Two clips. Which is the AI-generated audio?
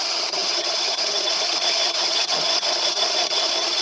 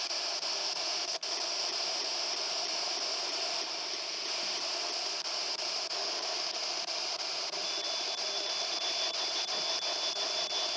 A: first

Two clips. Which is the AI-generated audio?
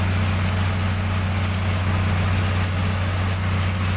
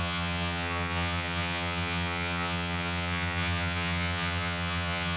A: second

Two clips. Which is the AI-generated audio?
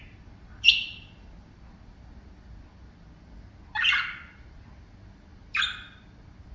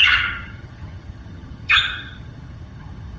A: second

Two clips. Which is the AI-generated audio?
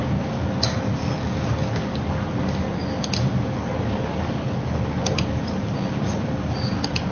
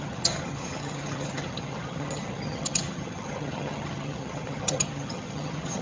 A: second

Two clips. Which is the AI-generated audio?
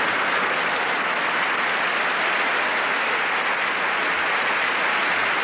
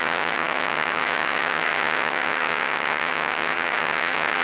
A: second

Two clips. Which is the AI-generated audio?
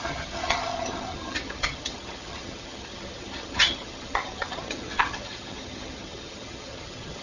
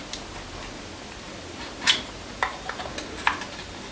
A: first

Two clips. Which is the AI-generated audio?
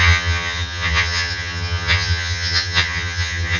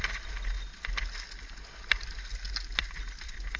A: first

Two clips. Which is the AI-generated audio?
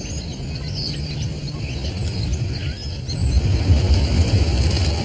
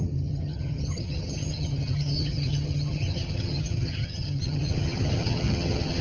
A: second